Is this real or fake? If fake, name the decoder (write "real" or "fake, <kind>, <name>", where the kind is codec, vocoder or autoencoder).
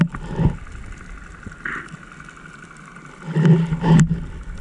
real